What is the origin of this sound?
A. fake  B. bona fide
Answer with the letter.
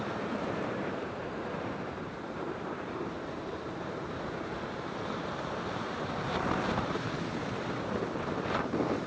A